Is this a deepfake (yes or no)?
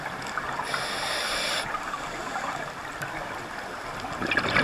no